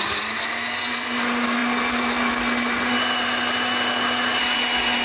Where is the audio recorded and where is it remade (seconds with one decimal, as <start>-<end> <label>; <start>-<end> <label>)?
0.0-5.0 recorded